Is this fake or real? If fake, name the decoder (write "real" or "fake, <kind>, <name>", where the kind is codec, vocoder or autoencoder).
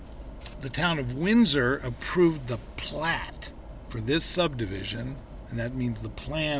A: real